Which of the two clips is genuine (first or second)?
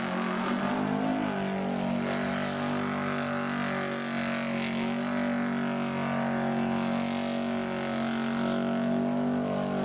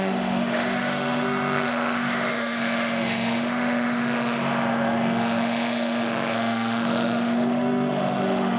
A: first